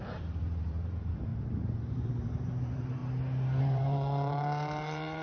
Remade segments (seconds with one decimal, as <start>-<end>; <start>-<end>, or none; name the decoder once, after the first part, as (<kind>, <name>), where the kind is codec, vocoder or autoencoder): 0.0-1.3 (vocoder, BigVGAN v2); 1.9-3.0; 3.6-5.2